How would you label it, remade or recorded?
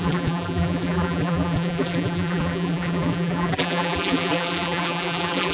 remade